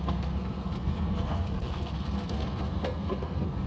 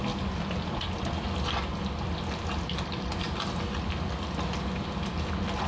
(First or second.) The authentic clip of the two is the second